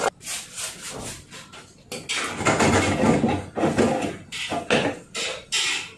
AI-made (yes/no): no